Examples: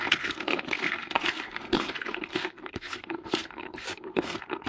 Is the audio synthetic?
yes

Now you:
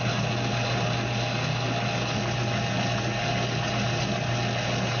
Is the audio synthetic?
no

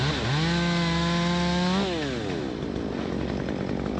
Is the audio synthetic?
no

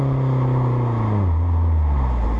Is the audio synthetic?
no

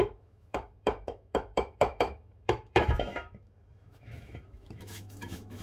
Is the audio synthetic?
yes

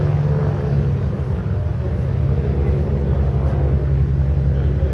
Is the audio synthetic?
no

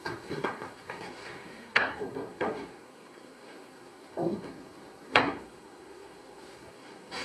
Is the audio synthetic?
yes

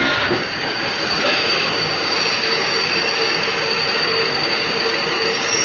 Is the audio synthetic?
yes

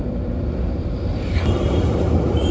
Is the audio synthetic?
no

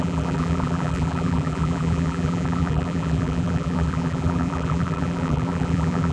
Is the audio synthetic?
yes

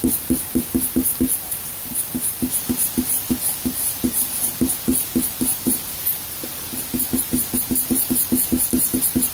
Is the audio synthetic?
yes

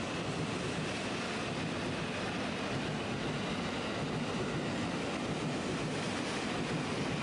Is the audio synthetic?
no